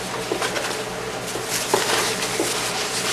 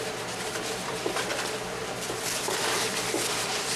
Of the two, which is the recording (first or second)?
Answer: first